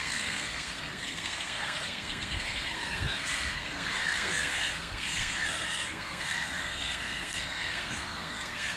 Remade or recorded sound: remade